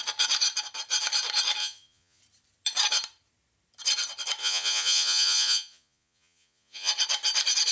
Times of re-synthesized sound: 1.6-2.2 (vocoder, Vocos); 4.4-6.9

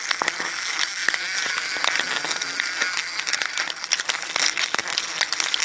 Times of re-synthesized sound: none

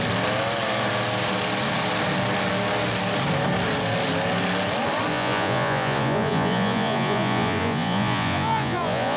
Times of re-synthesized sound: 5.1-9.2 (vocoder, Vocos)

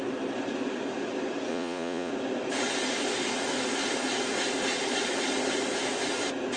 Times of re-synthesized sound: 1.5-2.1 (vocoder, Vocos)

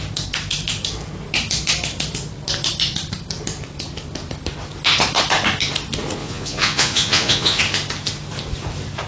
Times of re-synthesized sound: 6.2-7.6 (vocoder, Vocos)

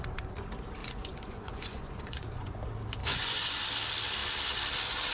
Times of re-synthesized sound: 0.8-2.6 (vocoder, Vocos); 3.0-3.6

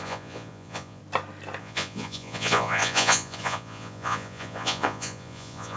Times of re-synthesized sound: 0.0-1.0 (vocoder, Vocos); 1.6-5.8